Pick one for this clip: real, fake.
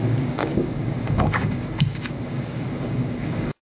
fake